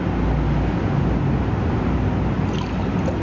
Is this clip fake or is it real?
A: real